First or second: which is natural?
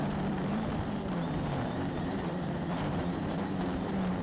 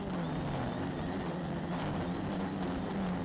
second